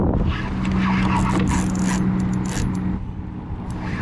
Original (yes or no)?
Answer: yes